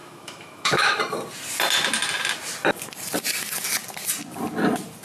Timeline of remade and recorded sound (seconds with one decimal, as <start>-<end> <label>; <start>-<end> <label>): 0.0-1.0 remade; 1.0-5.0 recorded